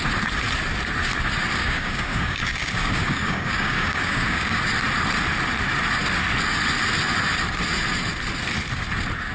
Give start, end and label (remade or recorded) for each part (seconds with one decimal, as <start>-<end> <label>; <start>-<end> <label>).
0.0-1.6 recorded; 1.6-4.6 remade; 4.6-9.3 recorded